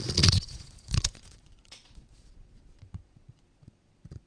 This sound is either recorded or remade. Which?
remade